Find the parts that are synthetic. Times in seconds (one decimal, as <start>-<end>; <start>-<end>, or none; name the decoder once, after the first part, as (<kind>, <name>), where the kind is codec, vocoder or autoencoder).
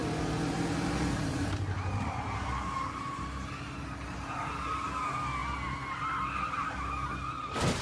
0.0-4.5 (vocoder, BigVGAN v2)